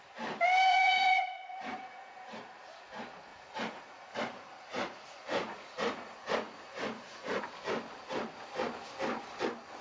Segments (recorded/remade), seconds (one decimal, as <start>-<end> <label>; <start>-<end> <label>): 0.0-0.7 recorded; 0.7-2.6 remade; 2.6-3.3 recorded; 3.3-7.4 remade; 7.4-9.8 recorded